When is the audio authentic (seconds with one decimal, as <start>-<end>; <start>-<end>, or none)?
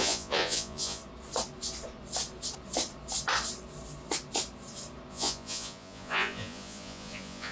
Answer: 1.0-5.1